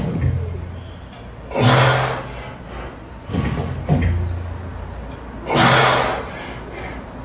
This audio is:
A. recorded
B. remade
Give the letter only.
A